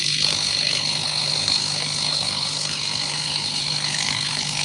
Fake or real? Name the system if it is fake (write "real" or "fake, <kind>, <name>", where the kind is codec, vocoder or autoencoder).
fake, codec, HILCodec